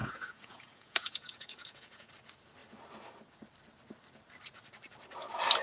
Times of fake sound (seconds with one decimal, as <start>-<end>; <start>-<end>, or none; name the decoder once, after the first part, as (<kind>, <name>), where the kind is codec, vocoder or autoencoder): 0.0-2.1 (vocoder, Vocos)